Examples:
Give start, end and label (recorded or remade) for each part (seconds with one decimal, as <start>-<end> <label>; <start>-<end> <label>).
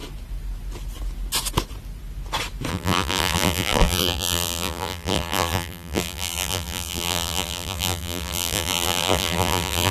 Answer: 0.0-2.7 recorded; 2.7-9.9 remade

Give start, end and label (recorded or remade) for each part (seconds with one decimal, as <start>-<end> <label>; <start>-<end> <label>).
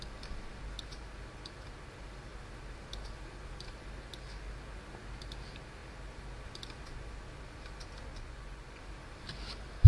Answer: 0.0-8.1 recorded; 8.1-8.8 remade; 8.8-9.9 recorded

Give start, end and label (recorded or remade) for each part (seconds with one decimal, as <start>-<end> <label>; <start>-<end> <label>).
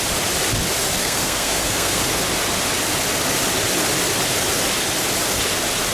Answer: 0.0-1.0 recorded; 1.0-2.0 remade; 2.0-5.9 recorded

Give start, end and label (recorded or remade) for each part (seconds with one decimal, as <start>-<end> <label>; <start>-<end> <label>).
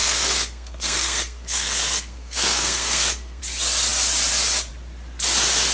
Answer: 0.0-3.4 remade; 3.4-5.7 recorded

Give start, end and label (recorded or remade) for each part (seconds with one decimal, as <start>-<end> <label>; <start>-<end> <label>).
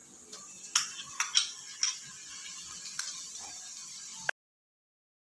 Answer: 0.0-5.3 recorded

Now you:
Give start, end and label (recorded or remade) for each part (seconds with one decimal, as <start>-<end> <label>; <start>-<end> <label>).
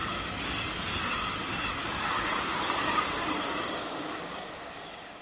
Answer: 0.0-1.8 recorded; 1.8-5.2 remade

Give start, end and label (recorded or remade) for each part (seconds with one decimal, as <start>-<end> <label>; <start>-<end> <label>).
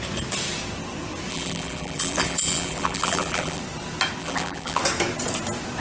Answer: 0.0-1.3 recorded; 1.3-3.6 remade; 3.6-4.2 recorded; 4.2-4.8 remade; 4.8-5.8 recorded